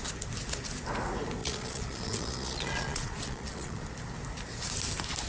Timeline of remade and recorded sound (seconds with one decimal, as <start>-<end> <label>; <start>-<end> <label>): 0.0-1.4 recorded; 1.4-3.8 remade; 3.8-5.3 recorded